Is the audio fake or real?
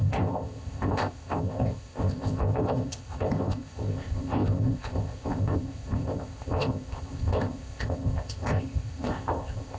fake